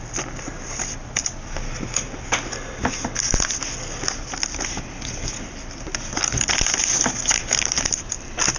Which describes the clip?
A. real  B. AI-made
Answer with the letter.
A